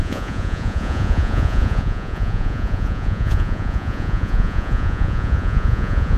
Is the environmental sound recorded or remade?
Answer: remade